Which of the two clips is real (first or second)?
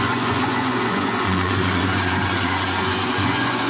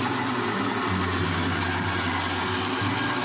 second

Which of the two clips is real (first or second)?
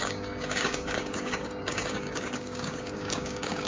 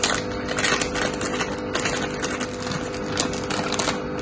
second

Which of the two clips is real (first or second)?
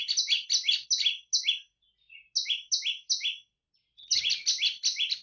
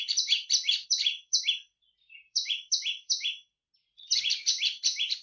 first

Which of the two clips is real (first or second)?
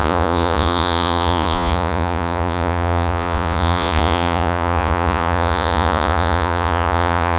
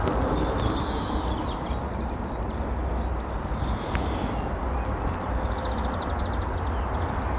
second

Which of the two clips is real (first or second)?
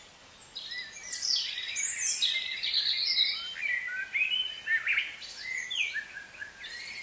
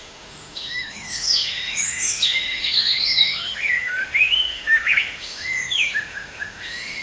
first